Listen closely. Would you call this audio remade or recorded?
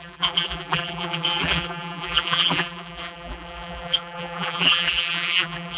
remade